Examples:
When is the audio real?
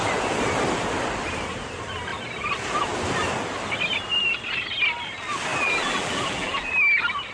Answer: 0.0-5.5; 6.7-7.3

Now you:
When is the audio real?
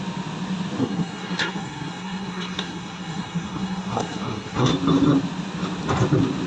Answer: 0.0-0.8; 4.7-6.5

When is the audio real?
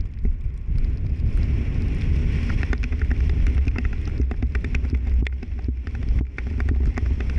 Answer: 0.0-2.2; 3.4-7.4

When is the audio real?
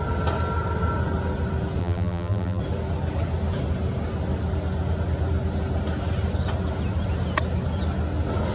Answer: 0.0-1.8; 2.6-8.5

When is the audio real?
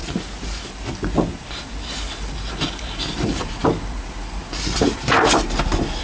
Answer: 0.0-6.0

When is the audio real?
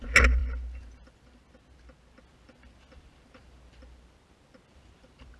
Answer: 0.0-5.4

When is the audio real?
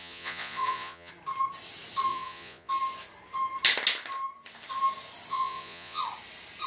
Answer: 1.1-2.1; 2.7-5.3; 6.0-6.7